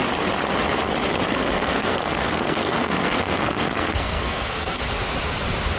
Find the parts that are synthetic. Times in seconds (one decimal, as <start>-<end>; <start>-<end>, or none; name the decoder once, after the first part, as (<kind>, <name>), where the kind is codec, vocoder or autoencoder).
1.3-4.8 (codec, SNAC)